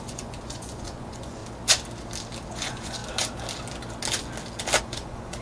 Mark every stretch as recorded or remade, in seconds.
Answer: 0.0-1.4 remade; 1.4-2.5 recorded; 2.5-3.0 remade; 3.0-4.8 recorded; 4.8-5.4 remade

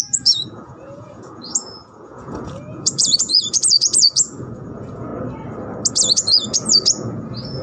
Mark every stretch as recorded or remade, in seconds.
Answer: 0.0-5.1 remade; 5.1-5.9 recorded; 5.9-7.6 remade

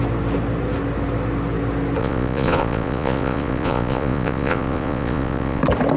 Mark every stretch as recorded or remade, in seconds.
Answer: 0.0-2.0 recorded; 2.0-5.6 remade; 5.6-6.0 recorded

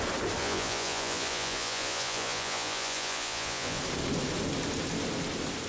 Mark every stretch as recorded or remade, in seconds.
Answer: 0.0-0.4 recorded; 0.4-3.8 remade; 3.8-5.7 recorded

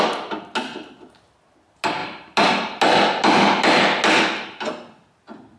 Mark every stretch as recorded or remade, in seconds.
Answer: 0.0-5.6 recorded

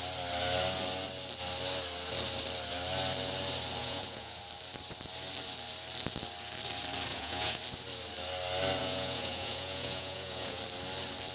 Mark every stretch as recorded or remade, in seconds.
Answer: 0.0-3.8 recorded; 3.8-4.4 remade; 4.4-7.1 recorded; 7.1-7.6 remade; 7.6-8.8 recorded; 8.8-10.6 remade; 10.6-11.3 recorded

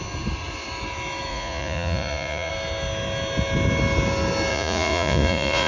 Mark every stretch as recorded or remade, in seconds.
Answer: 0.0-1.3 recorded; 1.3-2.5 remade; 2.5-4.5 recorded; 4.5-5.7 remade